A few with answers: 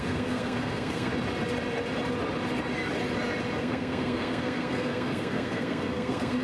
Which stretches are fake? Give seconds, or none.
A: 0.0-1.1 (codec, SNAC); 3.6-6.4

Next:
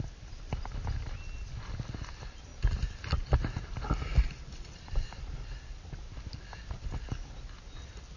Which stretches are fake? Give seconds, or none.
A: none

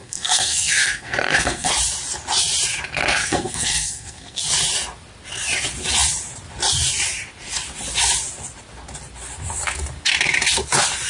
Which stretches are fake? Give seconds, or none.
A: 0.0-1.7 (codec, SNAC); 3.2-4.4

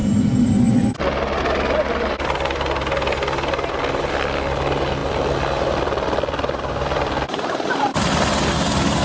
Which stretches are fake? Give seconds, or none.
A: none

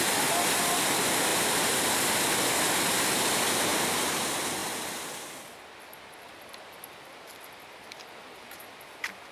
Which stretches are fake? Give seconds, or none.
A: 1.3-2.0 (vocoder, BigVGAN v2)

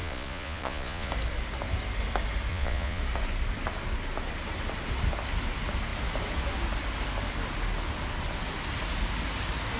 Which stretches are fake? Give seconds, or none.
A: 0.0-1.1 (vocoder, Vocos); 2.5-3.0

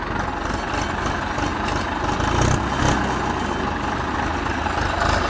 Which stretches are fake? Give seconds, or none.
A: none

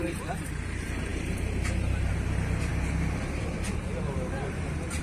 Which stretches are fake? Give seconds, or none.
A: 0.0-2.7 (vocoder, BigVGAN v2); 3.7-5.0